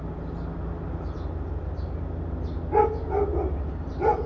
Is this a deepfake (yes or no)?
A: no